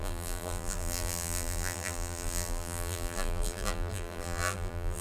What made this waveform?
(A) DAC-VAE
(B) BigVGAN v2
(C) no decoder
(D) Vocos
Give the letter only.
B